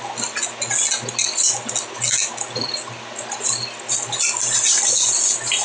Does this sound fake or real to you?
real